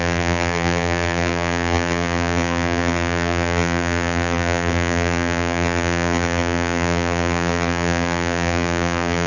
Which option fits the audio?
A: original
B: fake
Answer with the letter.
B